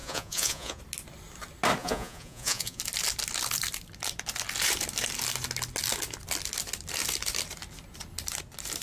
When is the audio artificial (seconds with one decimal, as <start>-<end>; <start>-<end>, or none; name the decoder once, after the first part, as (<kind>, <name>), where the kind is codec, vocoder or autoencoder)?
0.0-0.8 (vocoder, Vocos); 1.8-2.8